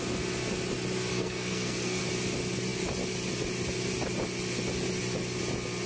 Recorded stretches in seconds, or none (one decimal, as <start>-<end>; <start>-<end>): 0.0-1.1; 2.0-5.9